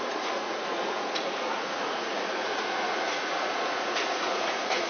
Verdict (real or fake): fake